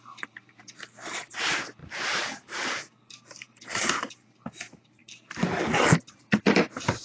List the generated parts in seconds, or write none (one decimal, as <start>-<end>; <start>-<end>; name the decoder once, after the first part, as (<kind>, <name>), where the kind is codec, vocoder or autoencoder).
0.0-1.8 (vocoder, BigVGAN v2); 3.1-7.0